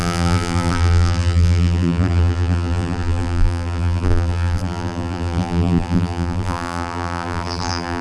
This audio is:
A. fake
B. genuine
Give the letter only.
A